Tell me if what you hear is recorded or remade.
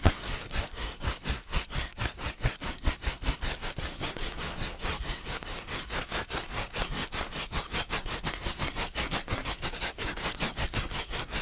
remade